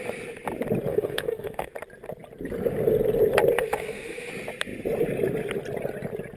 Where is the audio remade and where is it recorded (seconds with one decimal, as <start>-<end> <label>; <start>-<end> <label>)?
0.0-0.9 recorded; 0.9-1.7 remade; 1.7-3.6 recorded; 3.6-4.3 remade; 4.3-6.4 recorded